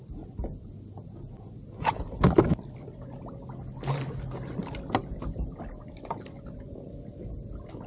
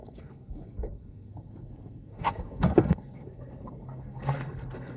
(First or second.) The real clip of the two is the first